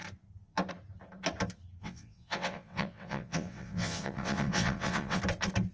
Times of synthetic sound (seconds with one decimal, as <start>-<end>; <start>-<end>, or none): 1.8-5.2